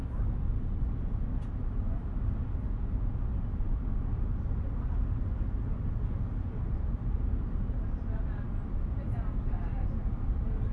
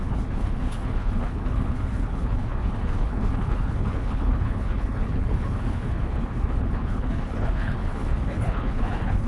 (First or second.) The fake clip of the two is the second